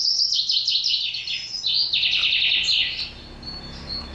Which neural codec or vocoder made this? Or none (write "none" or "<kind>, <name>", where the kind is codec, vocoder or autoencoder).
none